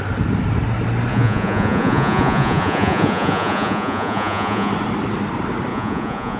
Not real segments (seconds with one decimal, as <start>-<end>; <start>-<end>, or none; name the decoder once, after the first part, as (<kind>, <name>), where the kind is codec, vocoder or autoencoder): 1.1-4.7 (vocoder, Vocos); 5.7-6.4